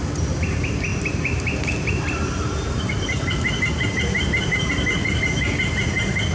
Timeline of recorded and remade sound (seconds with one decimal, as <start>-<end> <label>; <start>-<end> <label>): 0.0-0.9 recorded; 0.9-4.7 remade; 4.7-6.3 recorded